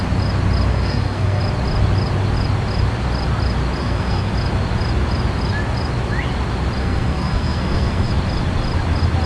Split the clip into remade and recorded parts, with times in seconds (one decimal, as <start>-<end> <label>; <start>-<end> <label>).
0.0-0.7 recorded; 0.7-1.4 remade; 1.4-3.8 recorded; 3.8-4.3 remade; 4.3-6.8 recorded; 6.8-8.1 remade; 8.1-9.3 recorded